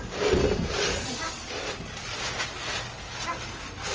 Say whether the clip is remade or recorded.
recorded